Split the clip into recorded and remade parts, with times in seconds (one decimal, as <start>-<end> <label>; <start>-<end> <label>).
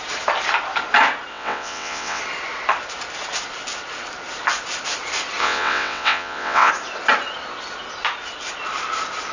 0.0-1.3 recorded; 1.3-2.2 remade; 2.2-5.4 recorded; 5.4-6.7 remade; 6.7-9.3 recorded